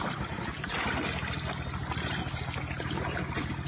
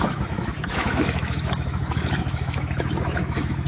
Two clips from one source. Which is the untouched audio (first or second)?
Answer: first